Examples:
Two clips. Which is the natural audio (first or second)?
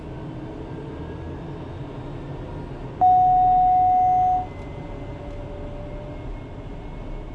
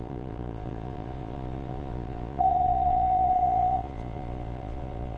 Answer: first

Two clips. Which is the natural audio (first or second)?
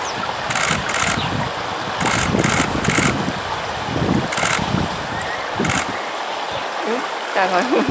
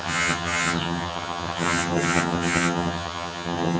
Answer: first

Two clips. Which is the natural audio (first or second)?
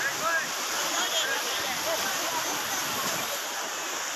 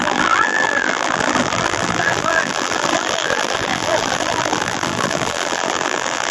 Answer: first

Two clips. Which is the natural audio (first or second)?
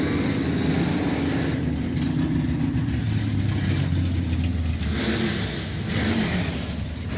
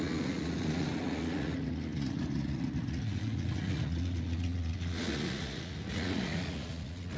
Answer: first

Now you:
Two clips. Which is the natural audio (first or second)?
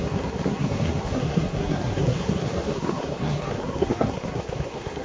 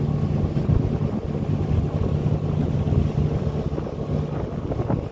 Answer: second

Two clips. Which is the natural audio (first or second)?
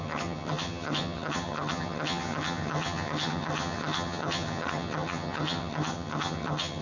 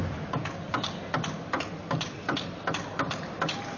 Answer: second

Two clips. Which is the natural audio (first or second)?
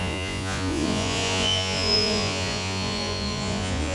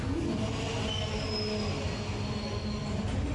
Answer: second